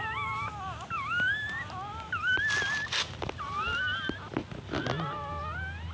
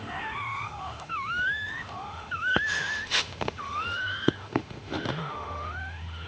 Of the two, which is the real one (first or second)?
first